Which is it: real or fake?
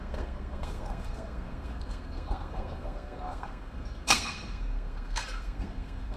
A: fake